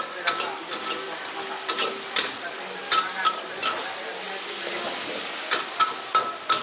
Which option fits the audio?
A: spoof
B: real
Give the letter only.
B